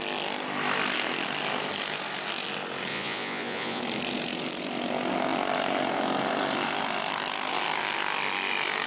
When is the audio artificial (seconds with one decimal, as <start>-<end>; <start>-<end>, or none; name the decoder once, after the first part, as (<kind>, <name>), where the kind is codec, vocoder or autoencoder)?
2.9-3.8 (vocoder, Vocos)